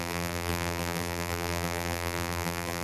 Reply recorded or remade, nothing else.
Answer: remade